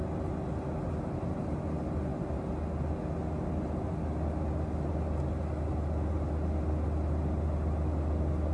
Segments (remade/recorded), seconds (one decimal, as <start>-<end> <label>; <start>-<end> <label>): 0.0-8.5 recorded